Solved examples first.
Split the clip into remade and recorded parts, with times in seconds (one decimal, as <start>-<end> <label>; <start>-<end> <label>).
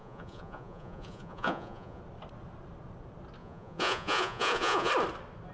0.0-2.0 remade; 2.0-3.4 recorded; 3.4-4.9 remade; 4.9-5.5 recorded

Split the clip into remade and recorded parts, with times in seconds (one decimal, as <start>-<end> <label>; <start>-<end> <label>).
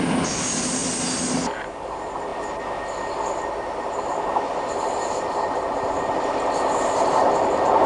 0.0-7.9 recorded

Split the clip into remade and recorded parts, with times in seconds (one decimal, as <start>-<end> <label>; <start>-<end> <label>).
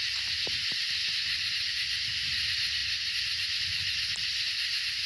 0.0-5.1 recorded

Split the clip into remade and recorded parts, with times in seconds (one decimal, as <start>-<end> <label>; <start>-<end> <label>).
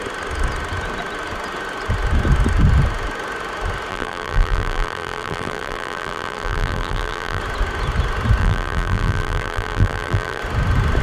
0.0-3.9 recorded; 3.9-7.4 remade; 7.4-8.4 recorded; 8.4-10.4 remade; 10.4-11.0 recorded